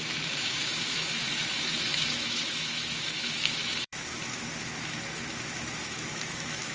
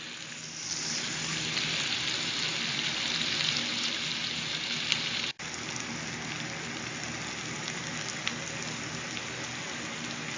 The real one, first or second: second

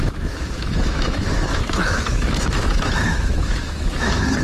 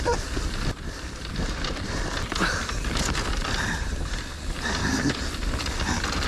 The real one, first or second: second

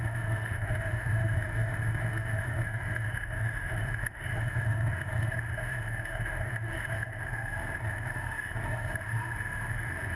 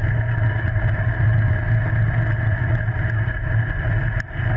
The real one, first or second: second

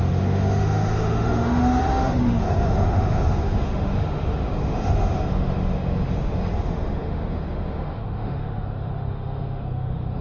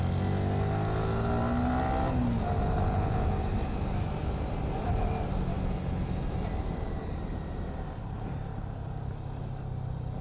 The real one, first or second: second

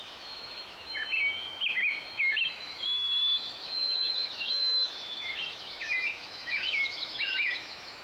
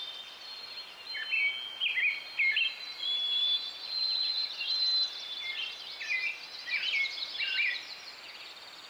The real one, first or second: second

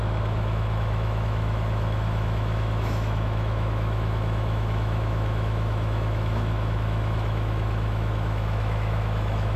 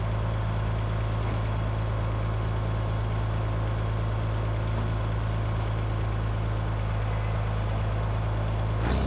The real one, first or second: second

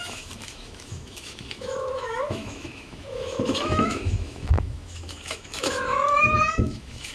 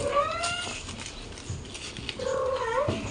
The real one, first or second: second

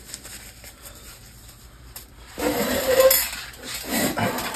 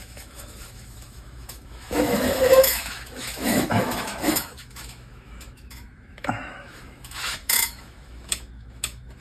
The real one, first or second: first